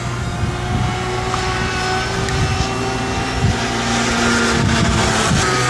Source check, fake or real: real